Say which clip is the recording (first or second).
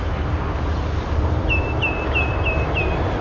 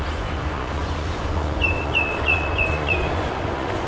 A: first